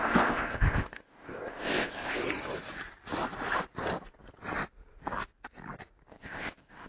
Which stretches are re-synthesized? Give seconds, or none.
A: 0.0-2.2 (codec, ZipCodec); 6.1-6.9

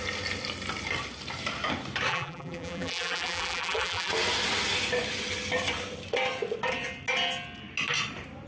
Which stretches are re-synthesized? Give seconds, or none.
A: 2.1-4.1 (vocoder, BigVGAN v2)